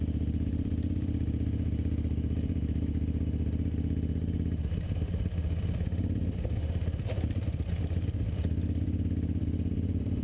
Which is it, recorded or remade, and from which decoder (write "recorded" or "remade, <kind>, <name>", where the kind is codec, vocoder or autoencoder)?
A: remade, vocoder, BigVGAN v2